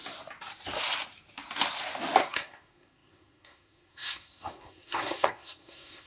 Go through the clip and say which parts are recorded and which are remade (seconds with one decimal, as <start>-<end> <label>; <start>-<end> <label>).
0.0-2.2 recorded; 2.2-6.1 remade